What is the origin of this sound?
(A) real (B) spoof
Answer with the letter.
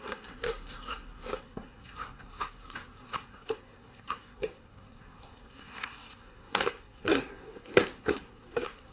B